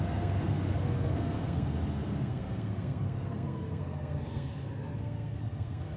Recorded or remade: remade